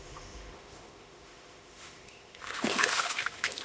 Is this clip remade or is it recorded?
remade